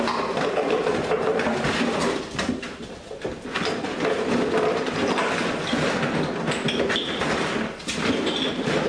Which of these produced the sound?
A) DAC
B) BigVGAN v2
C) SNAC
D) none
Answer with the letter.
D